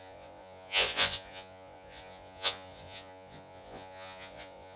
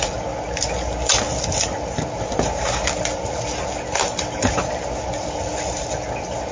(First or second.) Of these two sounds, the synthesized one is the first